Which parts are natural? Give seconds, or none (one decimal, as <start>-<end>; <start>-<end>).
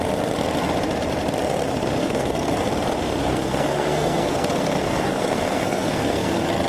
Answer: 0.0-2.0; 2.6-3.2